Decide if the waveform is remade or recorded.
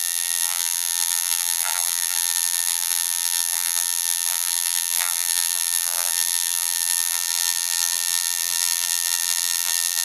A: remade